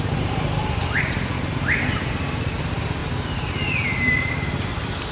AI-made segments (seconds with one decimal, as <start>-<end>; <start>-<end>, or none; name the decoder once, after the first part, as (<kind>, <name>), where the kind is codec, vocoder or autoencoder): none